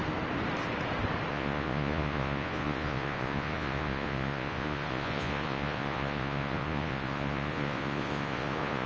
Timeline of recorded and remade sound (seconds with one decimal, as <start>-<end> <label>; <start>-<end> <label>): 0.0-1.3 recorded; 1.3-8.9 remade